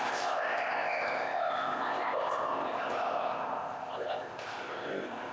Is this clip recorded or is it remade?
remade